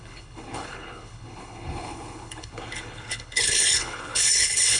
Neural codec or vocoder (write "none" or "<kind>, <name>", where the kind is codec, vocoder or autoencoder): codec, HILCodec